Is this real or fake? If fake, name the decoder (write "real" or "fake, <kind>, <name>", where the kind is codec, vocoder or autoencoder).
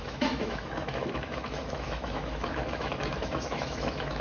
fake, autoencoder, DAC-VAE